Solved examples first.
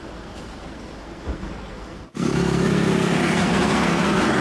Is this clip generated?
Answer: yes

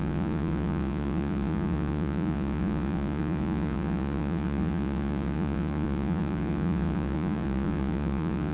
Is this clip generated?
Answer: yes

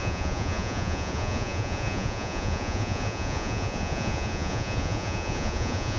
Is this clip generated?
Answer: yes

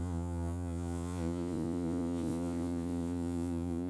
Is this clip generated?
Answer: yes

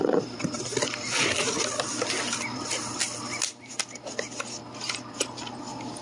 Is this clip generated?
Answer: no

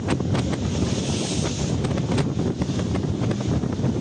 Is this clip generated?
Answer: no